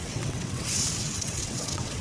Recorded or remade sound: remade